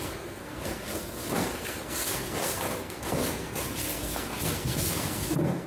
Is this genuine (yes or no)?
no